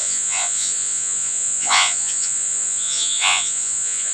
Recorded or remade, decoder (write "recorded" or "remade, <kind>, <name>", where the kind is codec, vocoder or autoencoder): remade, vocoder, Vocos